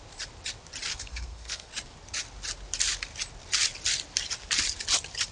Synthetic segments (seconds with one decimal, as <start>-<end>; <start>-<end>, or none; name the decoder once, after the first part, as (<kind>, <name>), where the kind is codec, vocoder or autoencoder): 0.9-1.7 (codec, SNAC)